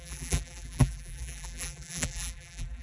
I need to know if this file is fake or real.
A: fake